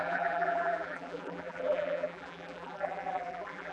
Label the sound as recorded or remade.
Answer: remade